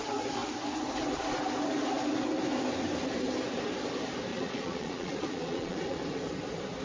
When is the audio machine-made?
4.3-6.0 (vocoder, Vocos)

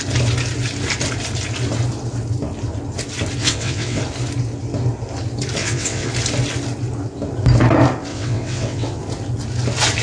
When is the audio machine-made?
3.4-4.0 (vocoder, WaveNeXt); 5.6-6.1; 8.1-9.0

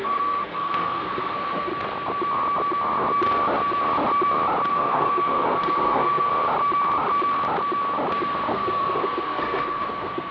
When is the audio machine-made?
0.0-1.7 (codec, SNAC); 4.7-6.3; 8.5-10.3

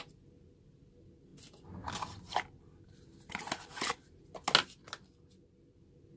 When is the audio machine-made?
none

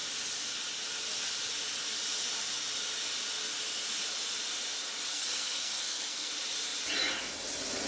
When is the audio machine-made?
5.1-6.3 (codec, SNAC)

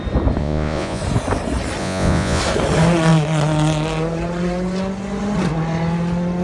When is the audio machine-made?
0.4-1.0 (vocoder, Vocos); 1.8-2.4

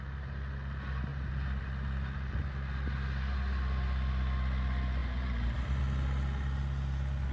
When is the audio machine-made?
1.1-1.6 (vocoder, BigVGAN v2); 5.0-5.8

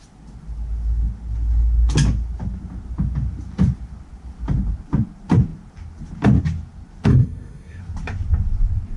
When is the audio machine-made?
7.1-7.8 (codec, SNAC)